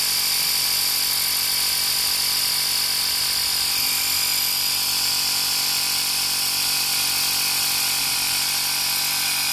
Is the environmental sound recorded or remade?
recorded